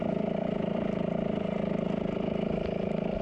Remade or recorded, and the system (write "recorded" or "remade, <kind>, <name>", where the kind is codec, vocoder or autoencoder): recorded